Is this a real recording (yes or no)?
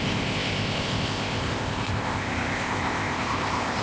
no